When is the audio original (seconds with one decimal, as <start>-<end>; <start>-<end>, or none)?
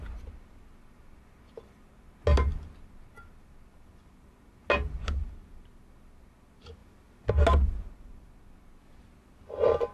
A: 0.0-9.9